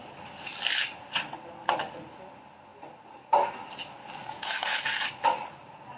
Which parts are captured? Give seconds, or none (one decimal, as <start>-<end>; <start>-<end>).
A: 0.0-4.2; 5.0-6.0